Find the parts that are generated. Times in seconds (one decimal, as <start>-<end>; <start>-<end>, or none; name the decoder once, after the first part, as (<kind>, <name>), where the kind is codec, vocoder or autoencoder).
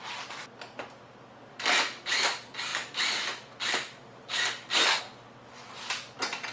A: none